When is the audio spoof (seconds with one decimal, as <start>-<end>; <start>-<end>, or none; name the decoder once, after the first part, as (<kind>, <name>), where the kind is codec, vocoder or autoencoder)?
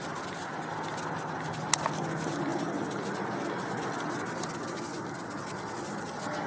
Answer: none